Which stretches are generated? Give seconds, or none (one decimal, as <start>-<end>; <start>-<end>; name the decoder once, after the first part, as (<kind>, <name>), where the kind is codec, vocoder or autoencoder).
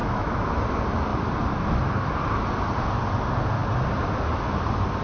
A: 0.0-0.5 (autoencoder, DAC-VAE)